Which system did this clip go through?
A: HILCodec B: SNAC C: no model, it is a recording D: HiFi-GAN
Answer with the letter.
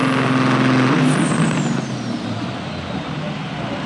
C